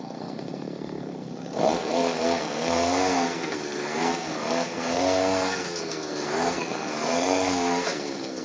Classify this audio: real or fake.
fake